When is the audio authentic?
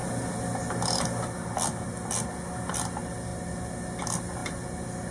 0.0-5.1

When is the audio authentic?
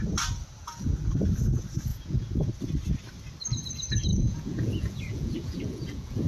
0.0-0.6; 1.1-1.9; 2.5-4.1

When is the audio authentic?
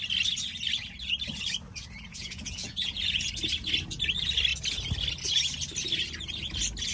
0.0-2.1; 3.3-6.9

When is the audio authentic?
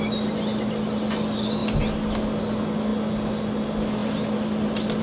0.0-5.0